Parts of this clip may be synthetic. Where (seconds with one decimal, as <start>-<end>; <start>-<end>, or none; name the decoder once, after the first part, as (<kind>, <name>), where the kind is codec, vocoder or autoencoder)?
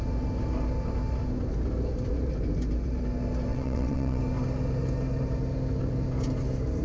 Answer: 3.5-4.2 (vocoder, WaveNeXt)